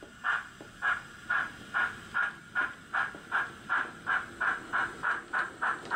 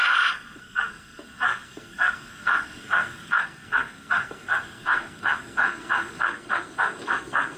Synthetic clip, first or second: second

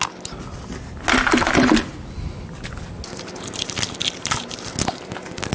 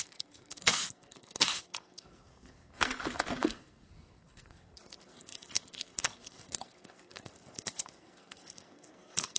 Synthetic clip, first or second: second